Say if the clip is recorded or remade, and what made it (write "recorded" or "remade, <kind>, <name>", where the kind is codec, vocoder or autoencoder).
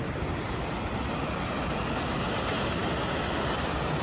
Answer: recorded